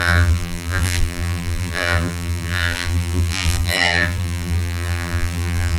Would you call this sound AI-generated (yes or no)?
yes